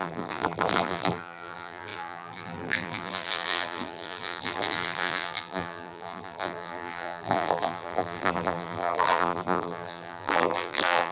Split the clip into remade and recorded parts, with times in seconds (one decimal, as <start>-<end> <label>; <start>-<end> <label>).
0.0-11.1 remade